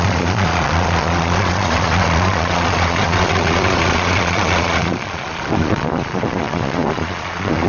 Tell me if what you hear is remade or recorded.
remade